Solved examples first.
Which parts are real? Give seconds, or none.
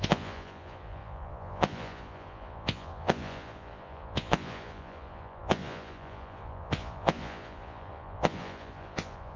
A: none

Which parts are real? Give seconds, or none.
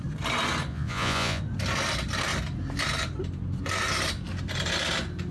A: 0.0-0.7; 1.4-5.3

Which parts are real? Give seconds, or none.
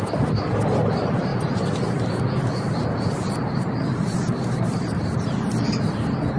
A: 0.0-6.4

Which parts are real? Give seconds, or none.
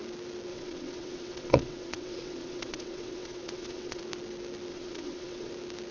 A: 0.0-0.5; 4.0-4.7; 5.5-5.9